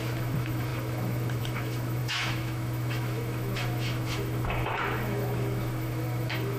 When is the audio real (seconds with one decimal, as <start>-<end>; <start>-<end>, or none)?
none